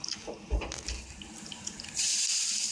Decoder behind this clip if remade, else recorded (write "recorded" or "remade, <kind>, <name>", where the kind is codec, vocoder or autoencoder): recorded